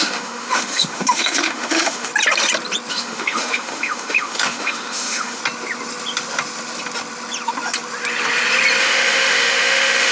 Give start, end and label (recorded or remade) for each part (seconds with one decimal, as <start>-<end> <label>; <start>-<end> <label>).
0.0-2.1 remade; 2.1-2.9 recorded; 2.9-5.4 remade; 5.4-8.8 recorded; 8.8-10.1 remade